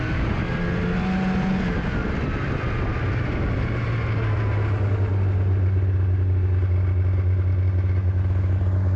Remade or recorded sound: recorded